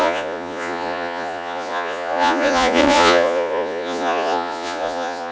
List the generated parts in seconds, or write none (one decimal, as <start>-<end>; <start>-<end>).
0.0-5.3